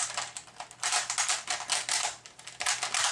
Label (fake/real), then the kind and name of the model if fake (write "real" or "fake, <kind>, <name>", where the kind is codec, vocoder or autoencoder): real